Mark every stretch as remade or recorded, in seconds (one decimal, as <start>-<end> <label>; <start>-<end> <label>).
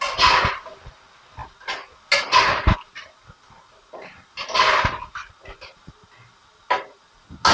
0.0-7.5 recorded